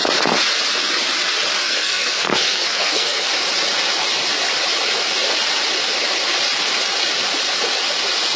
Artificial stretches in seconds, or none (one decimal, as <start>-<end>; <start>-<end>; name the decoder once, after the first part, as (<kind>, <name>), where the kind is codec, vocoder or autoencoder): 1.6-3.3 (codec, SNAC)